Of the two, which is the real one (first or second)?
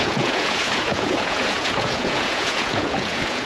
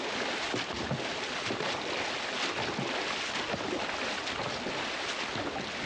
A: second